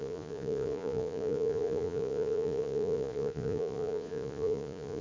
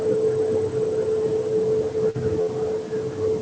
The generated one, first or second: first